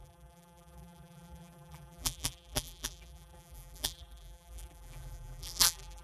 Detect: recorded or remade remade